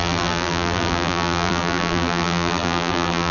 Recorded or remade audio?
remade